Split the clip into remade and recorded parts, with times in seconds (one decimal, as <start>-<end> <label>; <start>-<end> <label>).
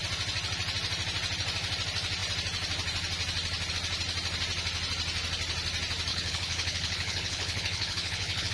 0.0-6.1 recorded; 6.1-8.5 remade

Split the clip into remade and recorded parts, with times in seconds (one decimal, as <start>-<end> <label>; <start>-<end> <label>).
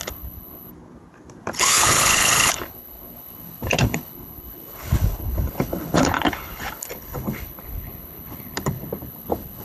0.0-0.7 remade; 0.7-1.6 recorded; 1.6-9.6 remade